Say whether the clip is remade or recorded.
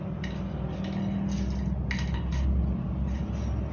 recorded